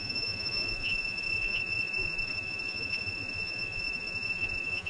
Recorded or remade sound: remade